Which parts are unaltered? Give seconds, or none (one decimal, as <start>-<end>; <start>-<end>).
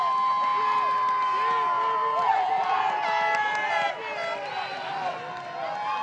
0.0-6.0